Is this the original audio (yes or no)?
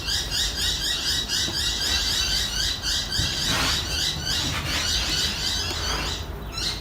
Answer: yes